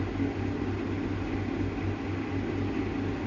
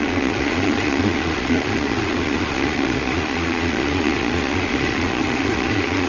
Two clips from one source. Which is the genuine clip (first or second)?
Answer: first